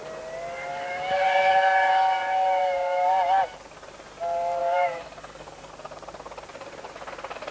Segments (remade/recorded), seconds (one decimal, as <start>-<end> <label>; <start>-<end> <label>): 0.0-0.7 recorded; 0.7-1.9 remade; 1.9-2.6 recorded; 2.6-3.2 remade; 3.2-4.6 recorded; 4.6-5.7 remade; 5.7-7.5 recorded